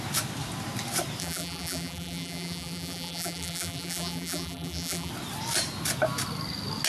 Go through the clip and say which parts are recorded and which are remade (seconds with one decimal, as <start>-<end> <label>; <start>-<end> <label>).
0.0-1.2 recorded; 1.2-5.1 remade; 5.1-6.9 recorded